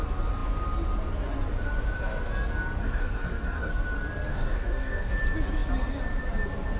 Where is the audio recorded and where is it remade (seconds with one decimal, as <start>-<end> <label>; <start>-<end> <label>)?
0.0-2.8 recorded; 2.8-3.7 remade; 3.7-4.3 recorded; 4.3-5.1 remade; 5.1-6.8 recorded